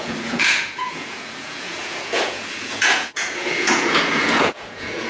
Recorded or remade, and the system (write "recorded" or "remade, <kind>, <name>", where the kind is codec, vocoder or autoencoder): remade, vocoder, Vocos